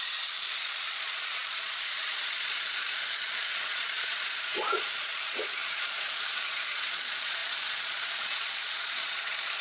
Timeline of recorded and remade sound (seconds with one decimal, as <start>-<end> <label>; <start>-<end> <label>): 0.0-9.6 remade